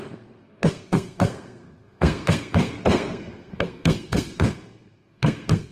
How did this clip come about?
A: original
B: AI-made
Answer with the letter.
B